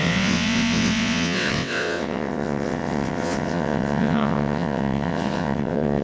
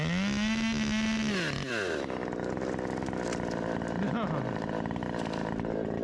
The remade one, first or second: first